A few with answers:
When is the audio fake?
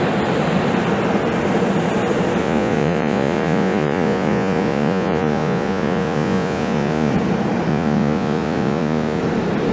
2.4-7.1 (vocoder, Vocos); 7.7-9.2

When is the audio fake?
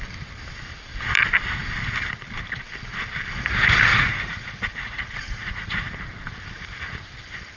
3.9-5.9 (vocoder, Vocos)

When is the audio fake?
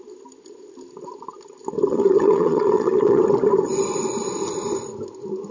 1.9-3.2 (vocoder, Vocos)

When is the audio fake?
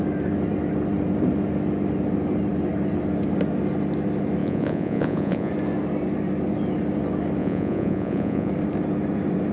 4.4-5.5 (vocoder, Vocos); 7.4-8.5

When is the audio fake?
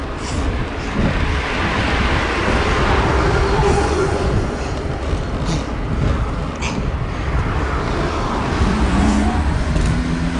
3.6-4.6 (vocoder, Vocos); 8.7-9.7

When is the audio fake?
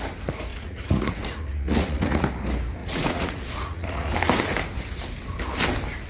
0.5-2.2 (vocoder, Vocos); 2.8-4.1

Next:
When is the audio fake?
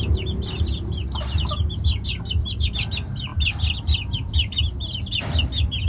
none